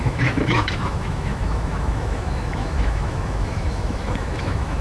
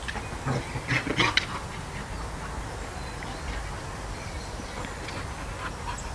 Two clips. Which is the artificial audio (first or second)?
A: first